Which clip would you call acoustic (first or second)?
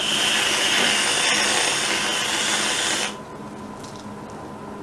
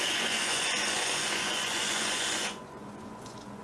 first